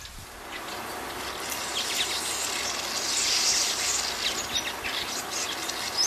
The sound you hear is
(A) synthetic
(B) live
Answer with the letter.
B